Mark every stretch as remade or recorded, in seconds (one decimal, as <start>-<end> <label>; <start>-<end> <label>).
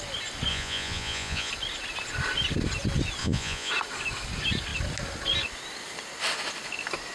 0.0-0.5 recorded; 0.5-1.5 remade; 1.5-3.2 recorded; 3.2-3.7 remade; 3.7-7.1 recorded